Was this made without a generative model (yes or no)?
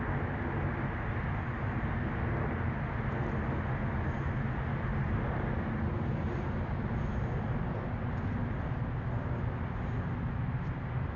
yes